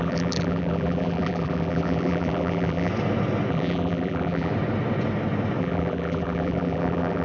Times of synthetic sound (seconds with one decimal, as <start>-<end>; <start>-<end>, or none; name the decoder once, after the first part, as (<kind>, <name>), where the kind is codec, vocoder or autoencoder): 0.0-2.9 (vocoder, BigVGAN v2); 3.5-4.5; 5.6-7.2